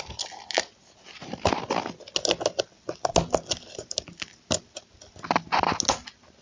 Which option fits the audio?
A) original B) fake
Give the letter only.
A